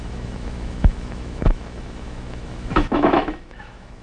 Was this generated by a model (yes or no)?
yes